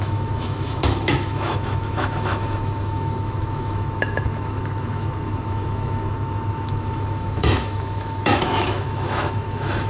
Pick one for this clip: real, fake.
fake